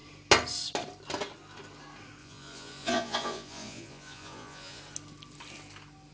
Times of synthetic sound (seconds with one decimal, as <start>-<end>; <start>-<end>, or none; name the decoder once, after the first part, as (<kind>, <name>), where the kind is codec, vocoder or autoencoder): 2.2-4.8 (vocoder, Vocos)